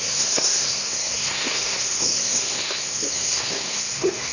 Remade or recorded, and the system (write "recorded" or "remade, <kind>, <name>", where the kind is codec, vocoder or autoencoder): remade, codec, SNAC